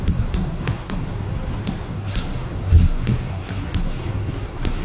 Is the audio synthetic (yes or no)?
yes